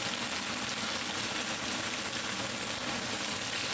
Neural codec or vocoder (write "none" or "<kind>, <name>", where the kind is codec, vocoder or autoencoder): none